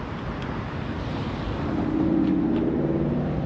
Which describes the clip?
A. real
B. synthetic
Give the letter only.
A